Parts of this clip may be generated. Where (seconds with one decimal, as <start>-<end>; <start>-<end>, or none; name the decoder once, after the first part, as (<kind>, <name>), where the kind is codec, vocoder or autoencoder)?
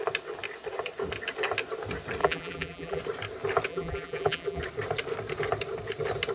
2.2-3.0 (vocoder, BigVGAN v2); 3.7-4.6